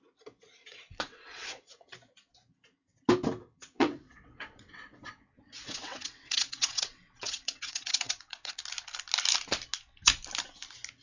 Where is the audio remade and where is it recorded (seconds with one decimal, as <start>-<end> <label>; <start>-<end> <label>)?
0.0-0.6 recorded; 0.6-1.9 remade; 1.9-3.4 recorded; 3.4-8.6 remade; 8.6-11.0 recorded

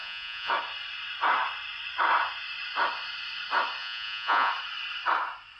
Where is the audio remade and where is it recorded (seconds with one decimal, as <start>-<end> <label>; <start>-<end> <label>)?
0.0-0.5 remade; 0.5-3.8 recorded; 3.8-4.5 remade; 4.5-5.6 recorded

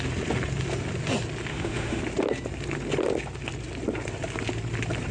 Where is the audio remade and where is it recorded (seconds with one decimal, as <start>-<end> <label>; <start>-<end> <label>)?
0.0-1.5 recorded; 1.5-2.0 remade; 2.0-5.1 recorded

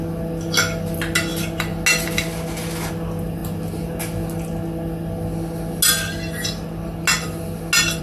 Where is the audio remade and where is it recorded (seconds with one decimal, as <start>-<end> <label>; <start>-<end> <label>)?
0.0-8.0 recorded

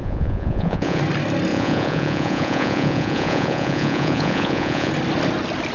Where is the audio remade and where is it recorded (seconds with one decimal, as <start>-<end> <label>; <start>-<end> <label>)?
0.0-1.0 remade; 1.0-1.5 recorded; 1.5-4.9 remade; 4.9-5.7 recorded

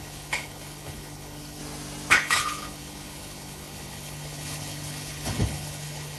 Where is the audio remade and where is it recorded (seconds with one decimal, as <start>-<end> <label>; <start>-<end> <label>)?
0.0-1.6 remade; 1.6-2.1 recorded; 2.1-6.2 remade

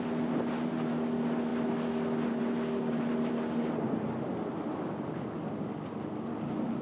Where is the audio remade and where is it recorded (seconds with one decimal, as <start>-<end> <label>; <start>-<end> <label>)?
0.0-6.8 recorded

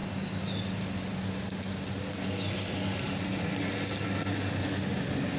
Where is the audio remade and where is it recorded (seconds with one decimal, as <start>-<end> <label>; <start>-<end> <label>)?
0.0-5.4 recorded